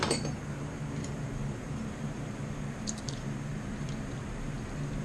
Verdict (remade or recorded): remade